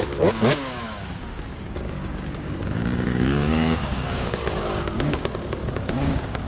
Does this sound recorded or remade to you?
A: remade